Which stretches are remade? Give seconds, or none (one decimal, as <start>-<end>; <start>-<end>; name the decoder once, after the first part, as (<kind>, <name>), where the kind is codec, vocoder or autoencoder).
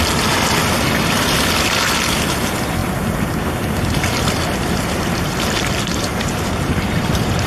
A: 2.8-7.5 (vocoder, BigVGAN v2)